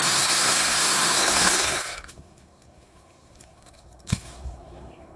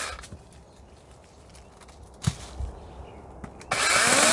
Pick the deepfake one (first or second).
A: first